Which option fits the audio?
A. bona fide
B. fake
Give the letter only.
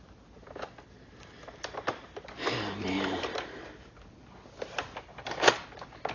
A